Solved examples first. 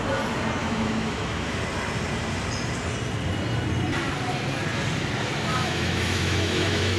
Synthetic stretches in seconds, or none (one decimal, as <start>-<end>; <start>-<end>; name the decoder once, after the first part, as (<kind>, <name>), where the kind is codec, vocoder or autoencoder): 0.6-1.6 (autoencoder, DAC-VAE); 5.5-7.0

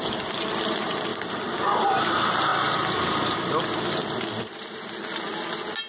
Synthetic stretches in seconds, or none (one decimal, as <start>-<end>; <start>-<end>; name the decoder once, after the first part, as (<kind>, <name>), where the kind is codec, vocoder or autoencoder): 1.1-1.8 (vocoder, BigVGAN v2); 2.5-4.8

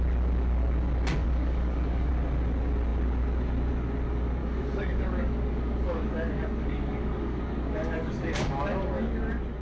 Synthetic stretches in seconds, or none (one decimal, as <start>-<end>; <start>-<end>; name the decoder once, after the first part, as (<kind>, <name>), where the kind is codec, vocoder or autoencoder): 1.2-2.1 (codec, DAC); 4.4-9.2